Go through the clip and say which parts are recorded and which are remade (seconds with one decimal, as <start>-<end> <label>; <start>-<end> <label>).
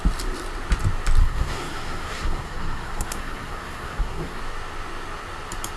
0.0-1.2 recorded; 1.2-4.4 remade; 4.4-5.8 recorded